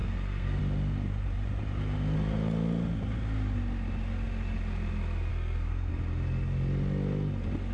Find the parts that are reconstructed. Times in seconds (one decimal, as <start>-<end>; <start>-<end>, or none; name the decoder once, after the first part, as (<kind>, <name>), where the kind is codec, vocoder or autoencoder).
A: 0.0-0.6 (codec, SNAC); 5.3-5.9